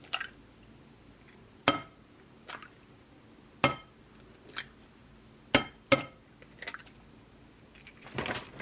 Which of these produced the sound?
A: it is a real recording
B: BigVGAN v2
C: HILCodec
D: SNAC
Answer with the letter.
A